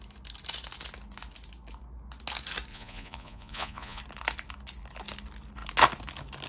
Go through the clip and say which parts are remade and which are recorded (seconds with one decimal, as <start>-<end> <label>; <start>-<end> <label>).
0.0-2.7 recorded; 2.7-4.0 remade; 4.0-6.5 recorded